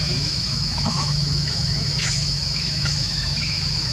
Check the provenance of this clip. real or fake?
fake